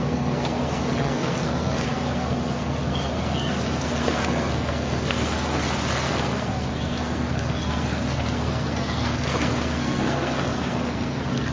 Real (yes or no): no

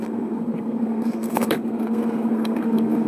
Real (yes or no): no